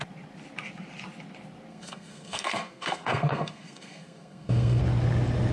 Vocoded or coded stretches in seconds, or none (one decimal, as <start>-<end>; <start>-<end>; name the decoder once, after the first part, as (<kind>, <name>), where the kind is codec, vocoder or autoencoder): 1.7-4.8 (codec, SNAC)